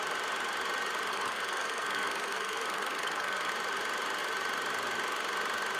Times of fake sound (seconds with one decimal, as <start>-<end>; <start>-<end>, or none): 1.1-3.5